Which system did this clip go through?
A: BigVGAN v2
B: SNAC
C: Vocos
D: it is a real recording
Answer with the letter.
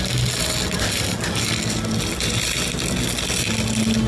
D